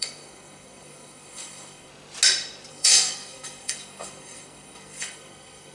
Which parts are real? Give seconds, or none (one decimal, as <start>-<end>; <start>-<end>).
1.9-2.7